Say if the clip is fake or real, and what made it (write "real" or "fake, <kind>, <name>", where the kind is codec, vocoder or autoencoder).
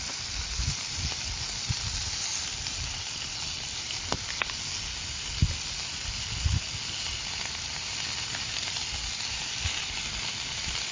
real